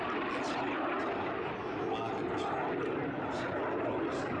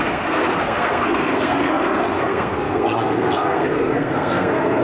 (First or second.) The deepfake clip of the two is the second